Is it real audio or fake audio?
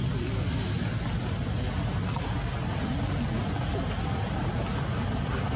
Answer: real